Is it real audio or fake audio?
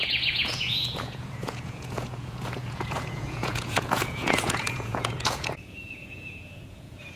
fake